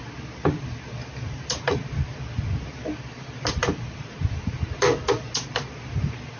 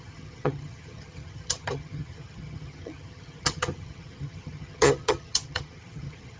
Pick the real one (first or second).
first